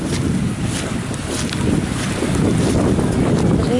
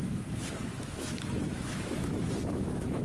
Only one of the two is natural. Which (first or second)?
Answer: first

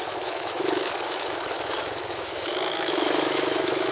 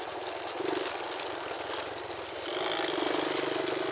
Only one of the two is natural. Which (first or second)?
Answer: second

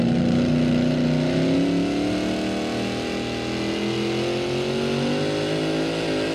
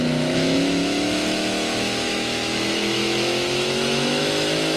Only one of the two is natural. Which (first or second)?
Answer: first